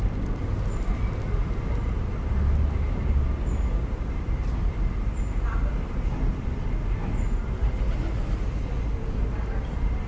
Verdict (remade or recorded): recorded